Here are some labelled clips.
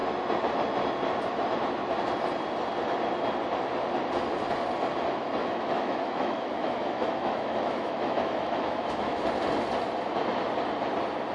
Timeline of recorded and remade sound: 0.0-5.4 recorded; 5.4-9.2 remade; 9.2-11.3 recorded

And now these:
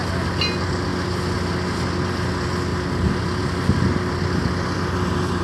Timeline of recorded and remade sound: 0.0-5.4 recorded